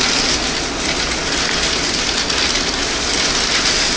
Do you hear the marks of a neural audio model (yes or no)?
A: no